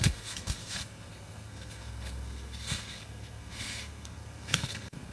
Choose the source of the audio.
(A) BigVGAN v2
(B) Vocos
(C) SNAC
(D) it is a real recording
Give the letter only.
C